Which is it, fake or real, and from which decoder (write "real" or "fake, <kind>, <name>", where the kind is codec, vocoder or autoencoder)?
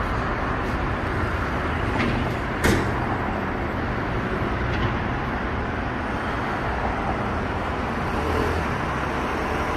real